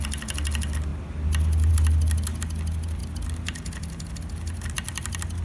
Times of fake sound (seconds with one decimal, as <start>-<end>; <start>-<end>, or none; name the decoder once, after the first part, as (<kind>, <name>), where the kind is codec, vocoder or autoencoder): none

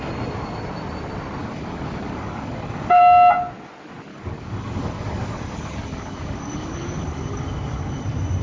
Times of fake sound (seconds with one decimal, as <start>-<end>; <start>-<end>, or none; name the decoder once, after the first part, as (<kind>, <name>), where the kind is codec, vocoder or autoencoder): 1.4-3.0 (codec, DAC); 4.1-8.0

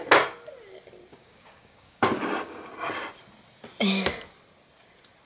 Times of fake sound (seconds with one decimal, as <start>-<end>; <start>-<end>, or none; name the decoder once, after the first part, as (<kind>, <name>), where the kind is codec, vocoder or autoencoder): 1.1-2.7 (codec, DAC)

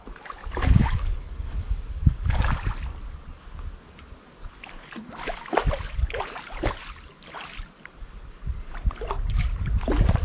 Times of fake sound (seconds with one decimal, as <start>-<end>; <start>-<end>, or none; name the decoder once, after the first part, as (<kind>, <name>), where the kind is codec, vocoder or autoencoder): 0.4-2.5 (codec, DAC)

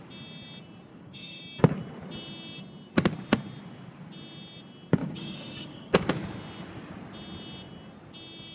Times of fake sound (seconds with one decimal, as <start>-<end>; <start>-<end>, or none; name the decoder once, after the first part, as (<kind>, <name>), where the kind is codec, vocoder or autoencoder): 0.9-1.4 (codec, DAC); 5.0-6.1

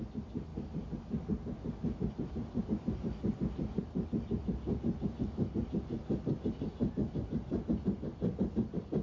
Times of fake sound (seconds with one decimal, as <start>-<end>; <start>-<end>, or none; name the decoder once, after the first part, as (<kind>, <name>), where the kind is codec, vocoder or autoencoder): none